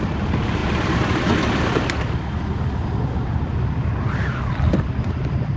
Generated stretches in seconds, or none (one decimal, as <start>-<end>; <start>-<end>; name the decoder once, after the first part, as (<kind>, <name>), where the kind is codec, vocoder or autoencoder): none

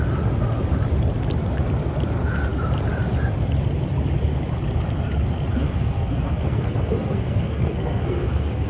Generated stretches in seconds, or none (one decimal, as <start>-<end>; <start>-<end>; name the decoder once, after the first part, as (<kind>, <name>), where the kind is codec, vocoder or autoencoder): 5.6-8.7 (codec, SNAC)

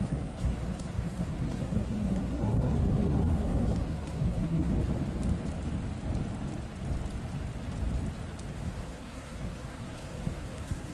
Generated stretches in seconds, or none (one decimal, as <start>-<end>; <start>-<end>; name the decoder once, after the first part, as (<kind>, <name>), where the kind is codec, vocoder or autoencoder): 0.0-4.7 (codec, SNAC); 8.6-10.9

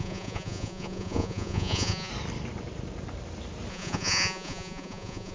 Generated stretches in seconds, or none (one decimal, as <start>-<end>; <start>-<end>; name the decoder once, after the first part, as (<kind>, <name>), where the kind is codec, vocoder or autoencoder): 0.0-2.1 (vocoder, Vocos); 3.7-5.3